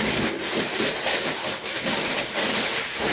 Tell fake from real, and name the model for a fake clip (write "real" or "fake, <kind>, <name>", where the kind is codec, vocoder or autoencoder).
real